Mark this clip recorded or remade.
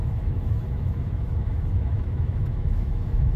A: remade